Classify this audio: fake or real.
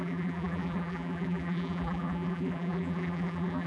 fake